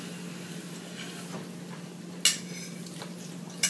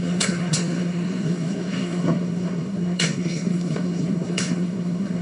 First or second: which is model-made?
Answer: second